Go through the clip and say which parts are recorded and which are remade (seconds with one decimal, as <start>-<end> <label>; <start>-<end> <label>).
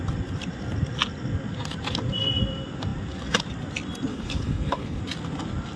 0.0-4.1 recorded; 4.1-5.0 remade; 5.0-5.8 recorded